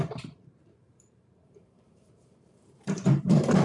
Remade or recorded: remade